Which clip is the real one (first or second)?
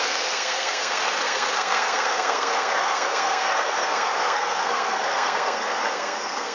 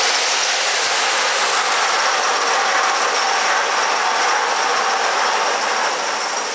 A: second